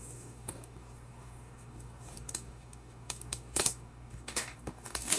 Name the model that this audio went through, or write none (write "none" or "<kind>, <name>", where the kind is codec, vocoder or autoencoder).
codec, DAC